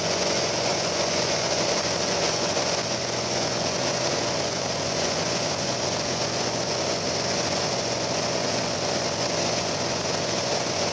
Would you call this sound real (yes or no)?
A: no